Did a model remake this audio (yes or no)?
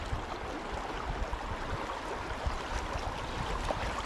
no